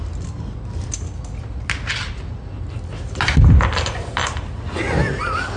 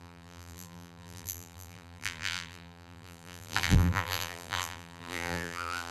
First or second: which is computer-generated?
second